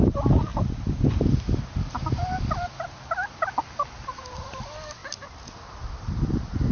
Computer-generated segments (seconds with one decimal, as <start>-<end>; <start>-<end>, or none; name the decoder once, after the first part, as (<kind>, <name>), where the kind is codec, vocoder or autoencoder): none